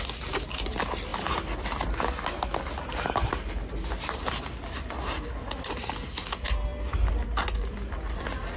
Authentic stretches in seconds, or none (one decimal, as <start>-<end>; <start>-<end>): 0.0-8.6